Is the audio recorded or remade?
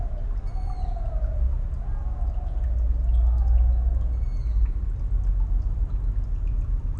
recorded